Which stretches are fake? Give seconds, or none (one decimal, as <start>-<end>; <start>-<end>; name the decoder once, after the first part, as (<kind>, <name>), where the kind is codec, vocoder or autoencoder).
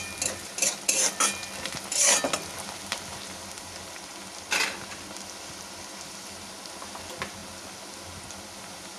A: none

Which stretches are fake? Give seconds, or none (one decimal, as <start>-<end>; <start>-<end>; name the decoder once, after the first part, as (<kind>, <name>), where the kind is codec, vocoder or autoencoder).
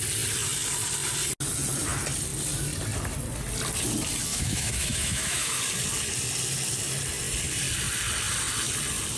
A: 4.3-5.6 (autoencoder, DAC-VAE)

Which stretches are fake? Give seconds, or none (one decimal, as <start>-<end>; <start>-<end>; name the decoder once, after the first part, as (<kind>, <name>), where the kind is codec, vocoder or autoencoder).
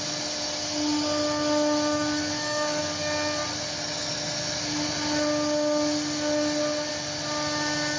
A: 1.9-2.8 (autoencoder, DAC-VAE)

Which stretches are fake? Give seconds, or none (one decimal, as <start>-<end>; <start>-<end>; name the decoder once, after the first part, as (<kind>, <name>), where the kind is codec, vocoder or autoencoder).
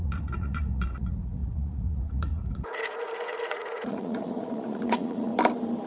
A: 0.0-5.3 (vocoder, Vocos)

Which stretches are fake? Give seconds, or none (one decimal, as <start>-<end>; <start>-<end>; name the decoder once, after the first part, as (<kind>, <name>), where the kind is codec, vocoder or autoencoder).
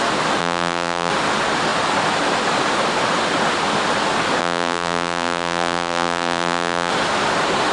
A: 0.4-1.1 (vocoder, BigVGAN v2); 4.4-6.9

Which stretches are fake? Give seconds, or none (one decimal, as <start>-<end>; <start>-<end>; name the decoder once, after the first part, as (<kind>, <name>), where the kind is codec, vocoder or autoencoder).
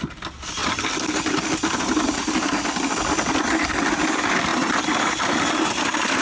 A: none